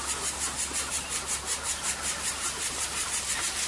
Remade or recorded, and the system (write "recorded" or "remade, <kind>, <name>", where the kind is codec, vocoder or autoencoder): recorded